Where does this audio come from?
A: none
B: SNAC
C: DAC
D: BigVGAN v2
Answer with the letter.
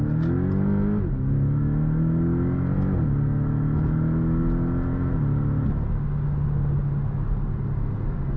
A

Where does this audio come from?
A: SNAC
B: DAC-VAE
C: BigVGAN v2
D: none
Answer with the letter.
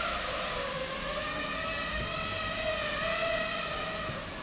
D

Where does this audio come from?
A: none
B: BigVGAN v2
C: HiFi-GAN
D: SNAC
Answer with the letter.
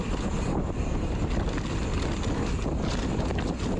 A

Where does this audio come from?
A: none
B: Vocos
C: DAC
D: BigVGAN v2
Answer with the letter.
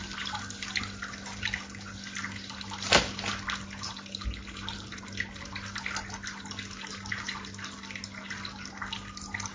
A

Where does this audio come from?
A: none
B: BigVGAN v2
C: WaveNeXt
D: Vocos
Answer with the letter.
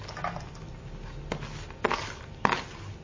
A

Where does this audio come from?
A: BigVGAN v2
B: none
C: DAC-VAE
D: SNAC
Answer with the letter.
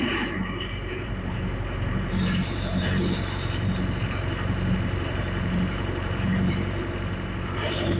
A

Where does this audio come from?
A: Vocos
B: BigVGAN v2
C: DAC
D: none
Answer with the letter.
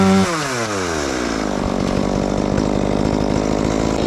D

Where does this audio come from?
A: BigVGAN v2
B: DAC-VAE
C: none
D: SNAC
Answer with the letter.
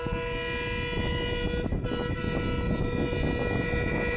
C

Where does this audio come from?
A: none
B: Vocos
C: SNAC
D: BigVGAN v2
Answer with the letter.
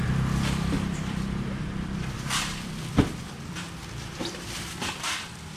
D